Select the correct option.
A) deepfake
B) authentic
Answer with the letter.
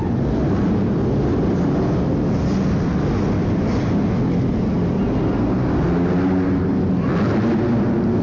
B